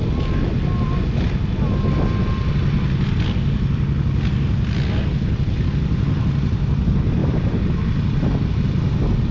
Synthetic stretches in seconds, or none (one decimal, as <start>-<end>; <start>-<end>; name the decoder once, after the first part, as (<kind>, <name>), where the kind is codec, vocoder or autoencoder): none